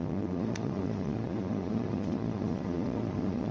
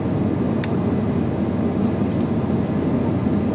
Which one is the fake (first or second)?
first